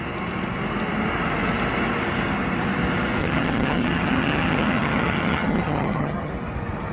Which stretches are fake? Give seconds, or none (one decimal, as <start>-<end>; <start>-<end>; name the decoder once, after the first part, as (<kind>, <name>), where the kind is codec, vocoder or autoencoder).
3.2-6.3 (vocoder, HiFi-GAN)